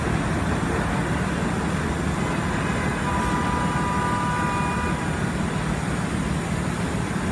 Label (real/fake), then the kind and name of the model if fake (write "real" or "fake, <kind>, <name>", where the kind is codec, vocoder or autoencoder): real